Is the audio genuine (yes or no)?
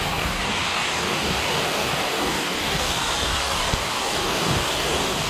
no